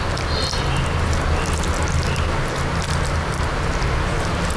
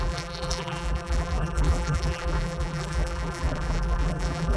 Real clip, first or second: first